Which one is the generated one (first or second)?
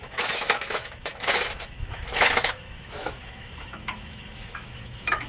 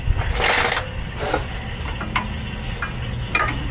first